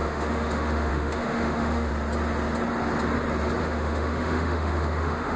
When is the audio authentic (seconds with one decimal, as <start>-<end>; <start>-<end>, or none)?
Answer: 1.9-3.6